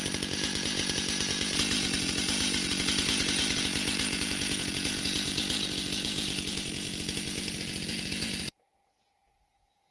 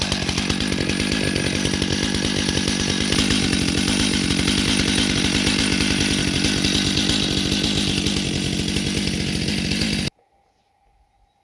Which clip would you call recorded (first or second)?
second